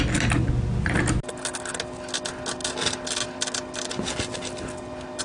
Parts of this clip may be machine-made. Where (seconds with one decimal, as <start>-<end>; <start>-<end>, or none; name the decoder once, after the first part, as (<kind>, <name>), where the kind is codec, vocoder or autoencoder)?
none